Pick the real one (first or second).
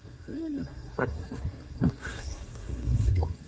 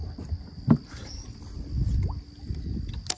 second